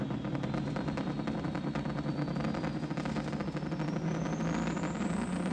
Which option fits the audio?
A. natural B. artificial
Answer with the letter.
A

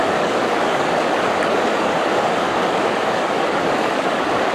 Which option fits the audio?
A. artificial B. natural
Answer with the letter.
A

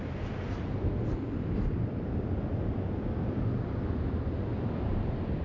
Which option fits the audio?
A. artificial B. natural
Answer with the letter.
B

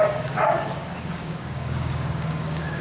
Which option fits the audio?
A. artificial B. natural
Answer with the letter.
A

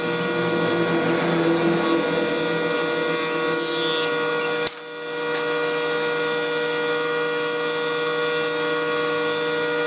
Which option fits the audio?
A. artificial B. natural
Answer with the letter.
B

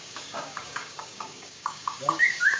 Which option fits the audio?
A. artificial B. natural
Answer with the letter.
A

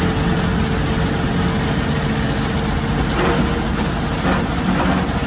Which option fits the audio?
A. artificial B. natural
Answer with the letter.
B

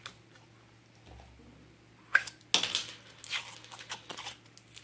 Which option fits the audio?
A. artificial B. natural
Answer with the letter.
B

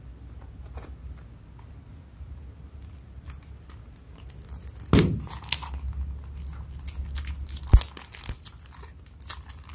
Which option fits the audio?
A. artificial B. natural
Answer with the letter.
B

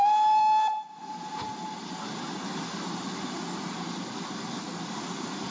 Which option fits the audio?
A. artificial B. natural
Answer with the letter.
B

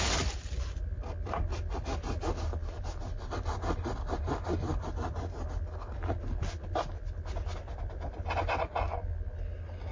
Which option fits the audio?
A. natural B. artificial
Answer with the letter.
A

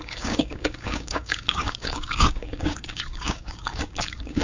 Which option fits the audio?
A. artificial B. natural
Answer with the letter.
A